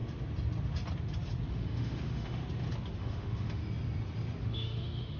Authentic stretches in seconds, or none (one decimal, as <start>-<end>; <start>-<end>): 0.0-1.5; 2.4-3.0; 3.6-4.4